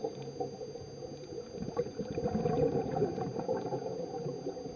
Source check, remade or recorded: recorded